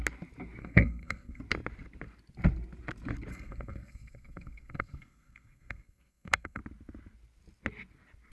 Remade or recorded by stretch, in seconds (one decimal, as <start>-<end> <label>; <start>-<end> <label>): 0.0-0.6 recorded; 0.6-1.4 remade; 1.4-3.3 recorded; 3.3-6.6 remade; 6.6-8.3 recorded

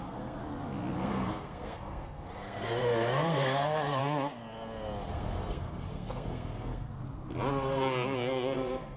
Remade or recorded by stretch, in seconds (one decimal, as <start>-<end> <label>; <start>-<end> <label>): 0.0-0.4 remade; 0.4-1.0 recorded; 1.0-4.0 remade; 4.0-5.1 recorded; 5.1-7.0 remade; 7.0-7.5 recorded; 7.5-9.0 remade

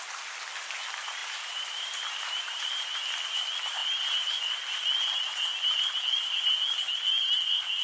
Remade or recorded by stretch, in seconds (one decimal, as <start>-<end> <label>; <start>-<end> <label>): 0.0-1.2 recorded; 1.2-3.0 remade; 3.0-7.8 recorded